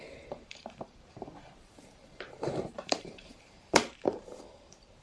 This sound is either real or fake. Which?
fake